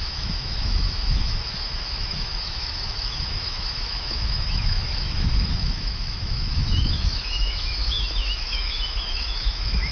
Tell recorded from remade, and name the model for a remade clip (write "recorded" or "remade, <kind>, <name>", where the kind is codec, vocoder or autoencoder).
remade, autoencoder, DAC-VAE